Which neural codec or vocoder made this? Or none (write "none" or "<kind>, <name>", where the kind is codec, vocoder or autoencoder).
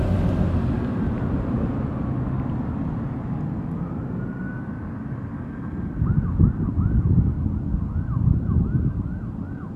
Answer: none